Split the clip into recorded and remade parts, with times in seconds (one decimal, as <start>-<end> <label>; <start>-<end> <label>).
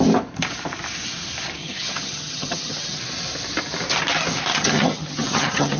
0.0-1.6 recorded; 1.6-3.0 remade; 3.0-4.5 recorded; 4.5-5.8 remade